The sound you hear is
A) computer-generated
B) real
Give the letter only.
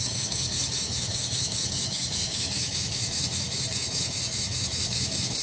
A